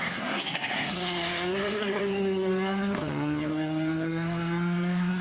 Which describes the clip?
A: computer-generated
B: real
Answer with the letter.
A